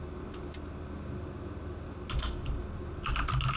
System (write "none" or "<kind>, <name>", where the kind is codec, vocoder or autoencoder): none